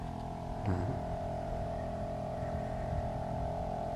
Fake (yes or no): yes